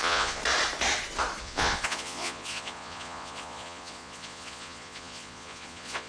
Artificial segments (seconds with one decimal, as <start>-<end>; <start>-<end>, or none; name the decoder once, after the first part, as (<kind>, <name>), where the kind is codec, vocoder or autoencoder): 0.0-0.4 (vocoder, Vocos); 1.4-6.1